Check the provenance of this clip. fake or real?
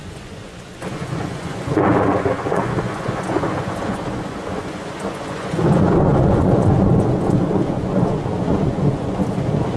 fake